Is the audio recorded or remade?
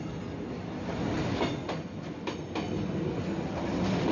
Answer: recorded